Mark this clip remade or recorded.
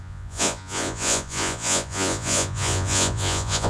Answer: remade